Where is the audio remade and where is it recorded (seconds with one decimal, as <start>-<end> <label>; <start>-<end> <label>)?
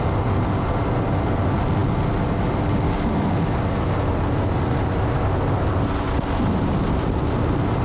0.0-7.8 recorded